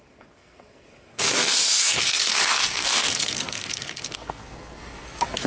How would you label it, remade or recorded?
remade